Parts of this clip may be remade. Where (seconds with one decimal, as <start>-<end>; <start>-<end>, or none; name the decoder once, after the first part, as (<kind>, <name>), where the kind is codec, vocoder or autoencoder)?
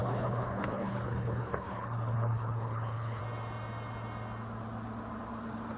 0.0-3.2 (codec, HILCodec)